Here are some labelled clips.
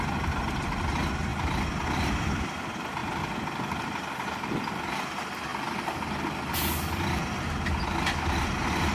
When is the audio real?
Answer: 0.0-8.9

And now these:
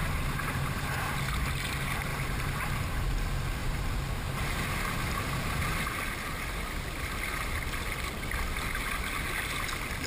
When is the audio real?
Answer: 1.2-2.1; 2.7-3.6; 4.7-10.1

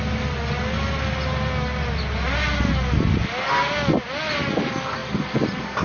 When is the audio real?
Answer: 0.0-5.8